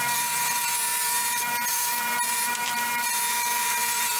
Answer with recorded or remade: remade